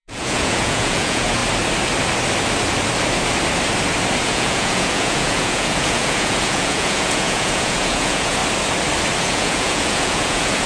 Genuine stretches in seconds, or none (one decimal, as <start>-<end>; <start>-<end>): 1.4-4.2; 8.4-9.2